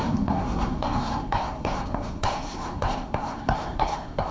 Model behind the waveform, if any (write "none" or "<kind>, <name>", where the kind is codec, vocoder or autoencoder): codec, SNAC